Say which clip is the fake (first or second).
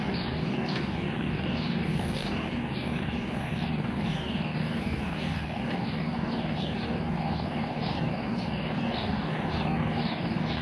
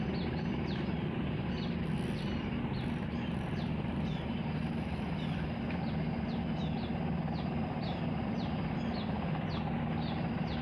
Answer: first